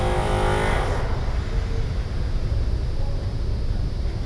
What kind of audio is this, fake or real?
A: real